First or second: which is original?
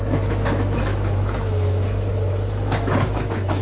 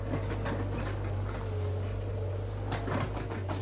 second